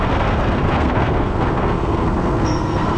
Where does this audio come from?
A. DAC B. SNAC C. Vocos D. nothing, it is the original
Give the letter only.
B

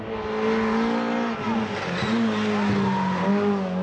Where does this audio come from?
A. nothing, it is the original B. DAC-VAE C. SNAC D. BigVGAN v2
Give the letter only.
A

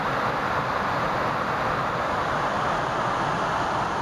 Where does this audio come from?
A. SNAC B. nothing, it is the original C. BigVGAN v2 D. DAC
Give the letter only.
B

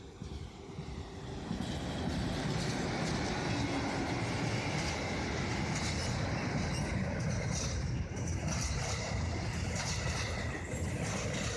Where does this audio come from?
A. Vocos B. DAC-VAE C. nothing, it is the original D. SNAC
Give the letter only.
C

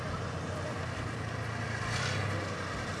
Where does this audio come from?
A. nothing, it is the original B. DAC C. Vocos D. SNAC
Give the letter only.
A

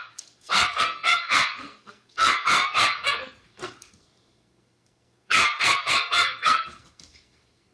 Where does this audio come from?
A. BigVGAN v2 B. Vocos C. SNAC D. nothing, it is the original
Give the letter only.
C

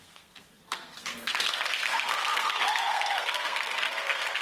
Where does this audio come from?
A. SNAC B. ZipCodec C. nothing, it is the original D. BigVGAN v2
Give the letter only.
A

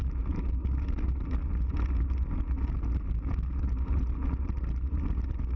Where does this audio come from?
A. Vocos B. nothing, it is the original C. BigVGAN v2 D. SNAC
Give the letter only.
B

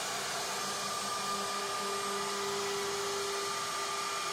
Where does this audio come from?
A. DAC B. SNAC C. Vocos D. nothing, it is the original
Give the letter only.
D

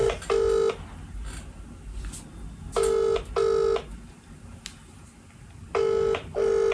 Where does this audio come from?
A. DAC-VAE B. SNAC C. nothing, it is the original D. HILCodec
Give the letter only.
C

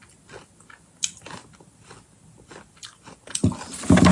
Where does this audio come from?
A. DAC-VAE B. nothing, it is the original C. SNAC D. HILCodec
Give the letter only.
B